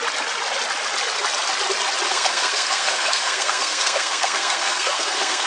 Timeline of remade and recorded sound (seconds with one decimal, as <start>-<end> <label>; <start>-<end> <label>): 0.0-2.1 recorded; 2.1-5.5 remade